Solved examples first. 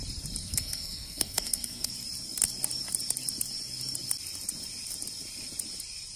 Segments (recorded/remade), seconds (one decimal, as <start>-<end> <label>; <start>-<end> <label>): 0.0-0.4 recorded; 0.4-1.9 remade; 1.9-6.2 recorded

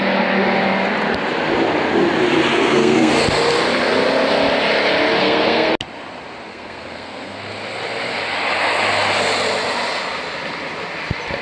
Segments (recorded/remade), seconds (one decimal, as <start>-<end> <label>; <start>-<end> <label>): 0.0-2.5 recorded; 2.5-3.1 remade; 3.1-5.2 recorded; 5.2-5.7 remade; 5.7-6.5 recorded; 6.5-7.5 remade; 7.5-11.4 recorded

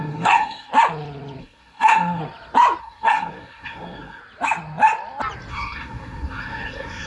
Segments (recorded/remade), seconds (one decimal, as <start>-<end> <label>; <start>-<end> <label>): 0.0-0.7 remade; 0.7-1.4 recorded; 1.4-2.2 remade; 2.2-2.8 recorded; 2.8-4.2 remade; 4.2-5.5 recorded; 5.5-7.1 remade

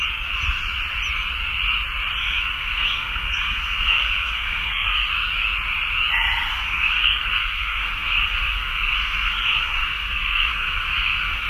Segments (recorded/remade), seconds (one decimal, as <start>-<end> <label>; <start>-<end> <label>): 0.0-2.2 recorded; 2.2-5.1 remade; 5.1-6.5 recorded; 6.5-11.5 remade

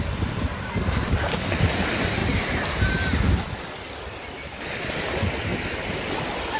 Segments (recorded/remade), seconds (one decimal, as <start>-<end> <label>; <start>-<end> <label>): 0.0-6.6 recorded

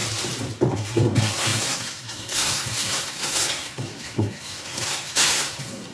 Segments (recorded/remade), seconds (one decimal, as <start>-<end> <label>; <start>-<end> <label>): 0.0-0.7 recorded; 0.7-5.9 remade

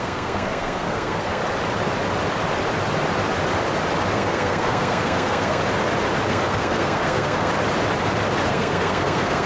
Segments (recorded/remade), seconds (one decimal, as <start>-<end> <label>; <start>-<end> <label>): 0.0-1.4 remade; 1.4-4.1 recorded; 4.1-5.6 remade; 5.6-6.3 recorded; 6.3-7.5 remade; 7.5-8.5 recorded; 8.5-9.5 remade

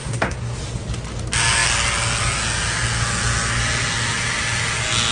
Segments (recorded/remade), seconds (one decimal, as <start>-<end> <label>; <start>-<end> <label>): 0.0-0.6 remade; 0.6-5.1 recorded